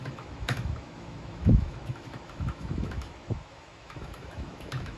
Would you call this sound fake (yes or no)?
yes